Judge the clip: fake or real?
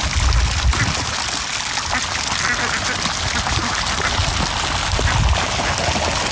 real